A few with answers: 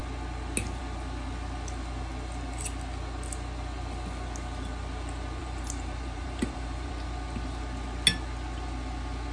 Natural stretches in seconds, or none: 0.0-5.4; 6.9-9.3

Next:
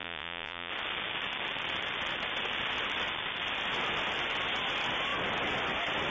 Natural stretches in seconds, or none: 0.7-6.1

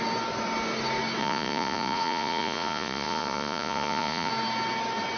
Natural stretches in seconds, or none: 0.0-1.2; 4.3-5.2

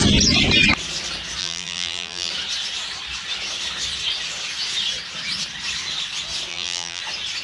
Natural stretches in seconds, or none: 0.0-1.4; 2.3-6.5; 7.0-7.4